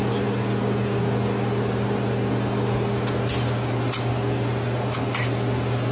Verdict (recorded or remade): recorded